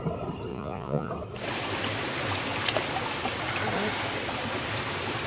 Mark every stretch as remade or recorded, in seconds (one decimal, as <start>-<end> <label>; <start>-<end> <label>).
0.0-0.5 recorded; 0.5-1.1 remade; 1.1-5.3 recorded